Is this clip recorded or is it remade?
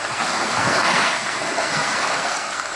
remade